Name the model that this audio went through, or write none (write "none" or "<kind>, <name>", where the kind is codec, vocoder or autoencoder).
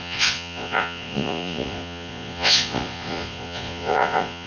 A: vocoder, Vocos